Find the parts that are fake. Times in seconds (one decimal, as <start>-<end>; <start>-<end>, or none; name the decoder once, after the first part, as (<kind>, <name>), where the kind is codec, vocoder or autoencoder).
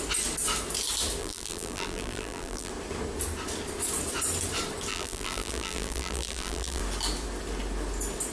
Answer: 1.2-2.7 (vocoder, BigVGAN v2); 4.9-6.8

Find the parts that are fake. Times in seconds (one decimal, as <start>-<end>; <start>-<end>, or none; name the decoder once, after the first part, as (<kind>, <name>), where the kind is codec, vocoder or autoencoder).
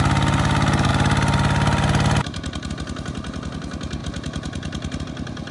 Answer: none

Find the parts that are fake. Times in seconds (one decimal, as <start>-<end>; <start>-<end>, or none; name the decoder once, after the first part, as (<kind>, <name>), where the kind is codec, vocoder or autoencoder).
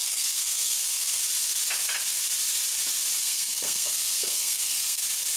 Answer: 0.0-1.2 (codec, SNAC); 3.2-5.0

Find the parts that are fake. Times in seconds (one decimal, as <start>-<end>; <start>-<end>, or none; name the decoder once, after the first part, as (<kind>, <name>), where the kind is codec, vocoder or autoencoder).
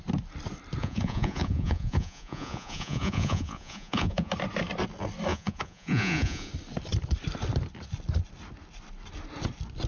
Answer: 0.8-4.3 (vocoder, Vocos); 5.3-6.5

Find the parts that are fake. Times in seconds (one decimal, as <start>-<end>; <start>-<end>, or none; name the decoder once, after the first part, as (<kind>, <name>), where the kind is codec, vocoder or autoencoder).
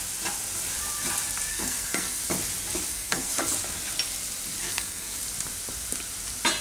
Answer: 1.5-2.2 (codec, SNAC); 2.9-3.4; 4.6-5.2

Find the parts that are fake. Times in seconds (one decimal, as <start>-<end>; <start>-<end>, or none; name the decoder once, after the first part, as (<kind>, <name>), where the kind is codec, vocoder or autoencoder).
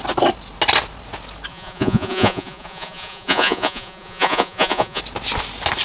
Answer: 1.5-5.0 (vocoder, Vocos)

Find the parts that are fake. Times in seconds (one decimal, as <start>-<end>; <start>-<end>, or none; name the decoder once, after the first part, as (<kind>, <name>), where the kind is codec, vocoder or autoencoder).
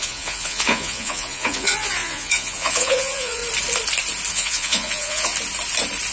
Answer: 0.0-3.4 (vocoder, Vocos); 4.3-5.3